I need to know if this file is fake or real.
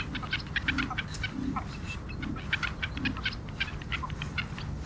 real